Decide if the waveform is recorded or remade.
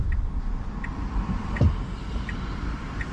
remade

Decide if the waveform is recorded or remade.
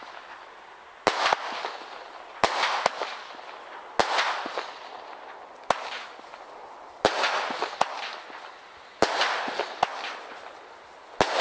recorded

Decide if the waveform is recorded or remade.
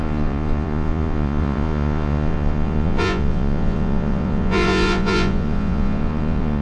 remade